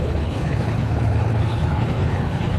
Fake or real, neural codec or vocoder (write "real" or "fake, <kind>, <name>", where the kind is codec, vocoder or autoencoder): fake, codec, HILCodec